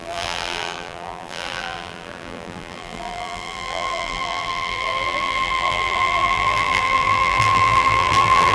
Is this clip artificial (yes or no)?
yes